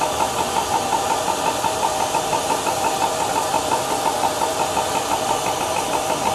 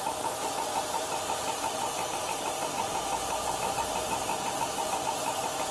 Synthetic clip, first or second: second